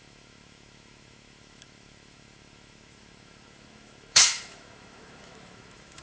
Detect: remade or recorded remade